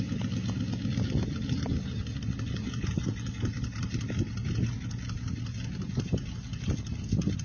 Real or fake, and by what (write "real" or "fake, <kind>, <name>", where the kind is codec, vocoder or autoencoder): real